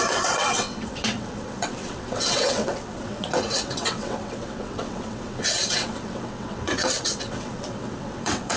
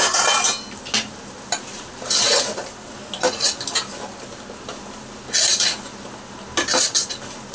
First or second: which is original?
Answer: second